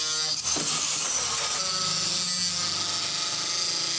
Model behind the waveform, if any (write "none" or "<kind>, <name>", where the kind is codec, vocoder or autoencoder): none